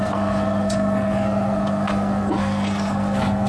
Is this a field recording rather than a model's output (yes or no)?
no